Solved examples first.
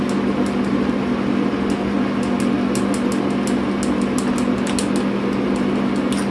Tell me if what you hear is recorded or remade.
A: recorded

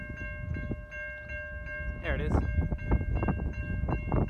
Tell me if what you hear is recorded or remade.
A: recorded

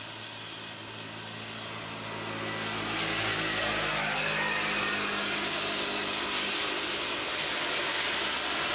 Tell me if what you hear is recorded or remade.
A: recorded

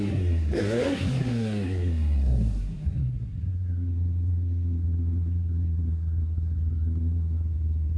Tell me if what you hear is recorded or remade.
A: remade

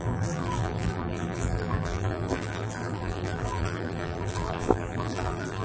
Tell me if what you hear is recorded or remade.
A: remade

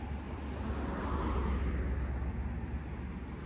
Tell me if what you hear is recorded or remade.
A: recorded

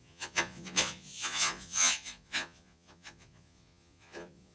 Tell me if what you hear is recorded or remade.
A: remade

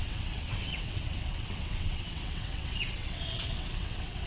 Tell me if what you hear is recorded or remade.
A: remade